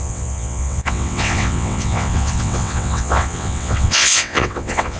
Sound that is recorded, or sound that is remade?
remade